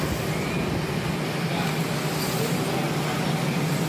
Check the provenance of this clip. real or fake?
real